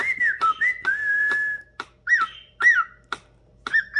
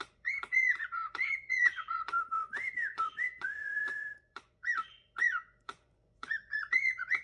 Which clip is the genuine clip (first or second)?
first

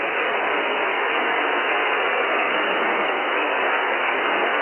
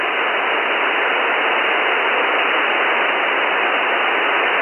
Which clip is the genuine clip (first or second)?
second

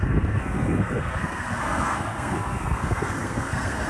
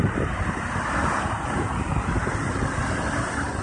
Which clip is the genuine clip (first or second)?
second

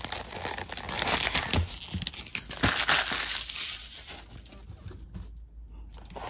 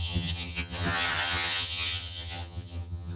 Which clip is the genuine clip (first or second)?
first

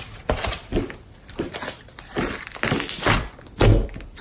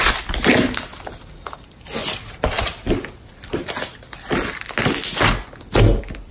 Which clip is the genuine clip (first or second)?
second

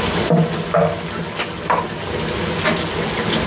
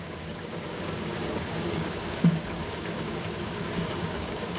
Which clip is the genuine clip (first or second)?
first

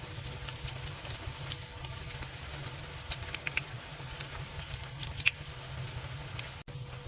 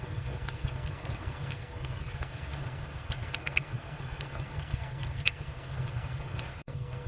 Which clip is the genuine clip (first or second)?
first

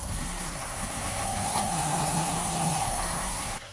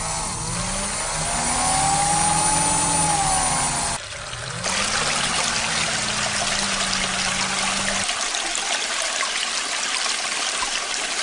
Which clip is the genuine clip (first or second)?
second